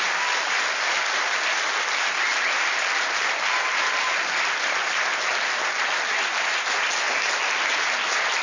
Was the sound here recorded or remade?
recorded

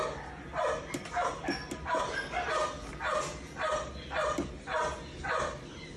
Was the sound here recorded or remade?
recorded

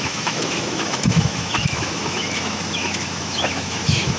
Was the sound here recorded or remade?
remade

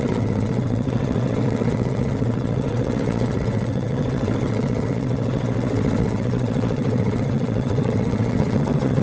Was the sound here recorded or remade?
remade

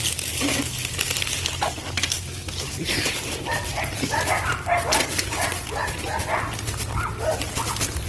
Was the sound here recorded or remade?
recorded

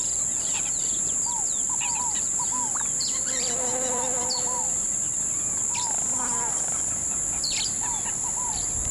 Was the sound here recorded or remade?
recorded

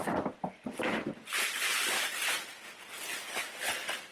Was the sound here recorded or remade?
recorded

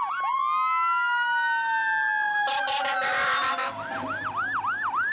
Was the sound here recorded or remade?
recorded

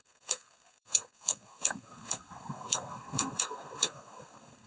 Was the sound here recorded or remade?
remade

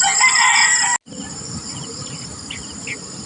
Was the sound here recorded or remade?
recorded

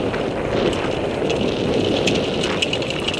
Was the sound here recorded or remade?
recorded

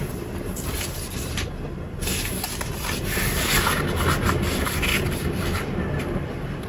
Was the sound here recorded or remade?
recorded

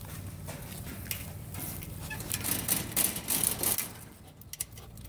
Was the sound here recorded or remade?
recorded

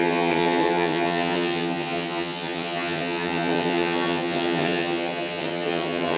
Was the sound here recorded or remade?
remade